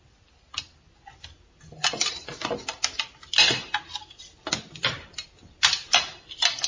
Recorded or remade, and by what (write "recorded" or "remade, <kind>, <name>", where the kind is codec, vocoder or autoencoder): recorded